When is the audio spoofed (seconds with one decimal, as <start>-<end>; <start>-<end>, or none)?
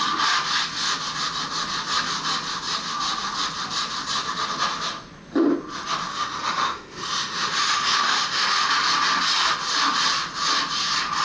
6.1-8.7